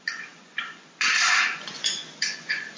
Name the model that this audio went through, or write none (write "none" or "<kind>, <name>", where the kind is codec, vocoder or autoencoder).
vocoder, Vocos